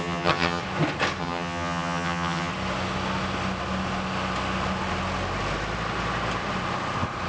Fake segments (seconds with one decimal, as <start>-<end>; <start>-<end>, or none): 0.0-0.6; 1.2-2.5